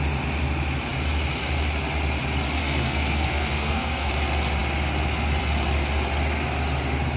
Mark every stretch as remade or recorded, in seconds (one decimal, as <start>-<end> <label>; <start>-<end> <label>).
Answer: 0.0-2.6 recorded; 2.6-4.1 remade; 4.1-7.2 recorded